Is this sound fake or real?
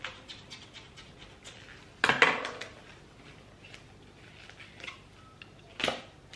real